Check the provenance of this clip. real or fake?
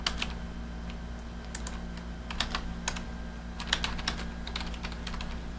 real